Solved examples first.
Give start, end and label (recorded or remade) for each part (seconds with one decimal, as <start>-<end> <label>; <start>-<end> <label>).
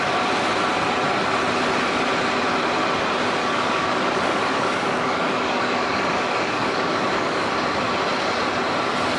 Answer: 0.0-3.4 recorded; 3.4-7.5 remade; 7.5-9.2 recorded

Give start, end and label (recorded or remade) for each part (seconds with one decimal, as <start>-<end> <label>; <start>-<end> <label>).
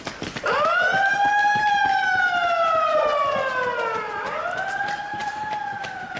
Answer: 0.0-1.1 remade; 1.1-4.8 recorded; 4.8-6.2 remade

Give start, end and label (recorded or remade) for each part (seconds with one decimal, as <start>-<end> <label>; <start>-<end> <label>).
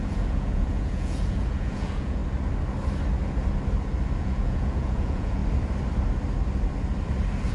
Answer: 0.0-2.2 remade; 2.2-4.2 recorded; 4.2-5.4 remade; 5.4-7.5 recorded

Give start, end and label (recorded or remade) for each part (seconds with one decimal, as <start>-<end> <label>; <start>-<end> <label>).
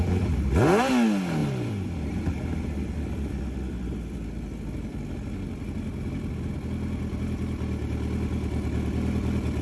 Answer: 0.0-1.4 recorded; 1.4-3.4 remade; 3.4-9.6 recorded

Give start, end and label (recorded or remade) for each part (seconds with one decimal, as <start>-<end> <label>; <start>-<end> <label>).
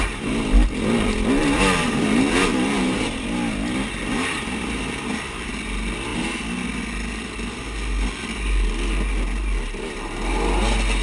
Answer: 0.0-11.0 recorded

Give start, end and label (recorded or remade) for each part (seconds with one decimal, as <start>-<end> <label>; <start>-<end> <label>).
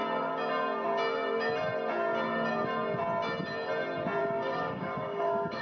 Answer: 0.0-4.2 recorded; 4.2-5.6 remade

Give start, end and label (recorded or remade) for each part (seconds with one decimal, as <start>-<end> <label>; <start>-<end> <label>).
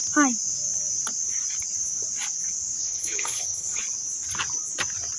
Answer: 0.0-2.8 recorded; 2.8-3.8 remade; 3.8-5.2 recorded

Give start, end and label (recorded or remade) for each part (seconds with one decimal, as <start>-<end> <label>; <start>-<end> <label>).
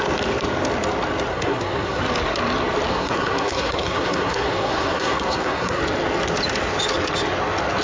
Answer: 0.0-1.3 recorded; 1.3-2.0 remade; 2.0-2.9 recorded; 2.9-5.8 remade; 5.8-7.8 recorded